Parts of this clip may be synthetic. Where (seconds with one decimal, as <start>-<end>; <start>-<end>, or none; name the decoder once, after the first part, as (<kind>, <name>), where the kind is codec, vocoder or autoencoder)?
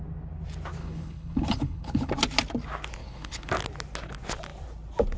0.8-2.1 (codec, HILCodec); 3.0-3.5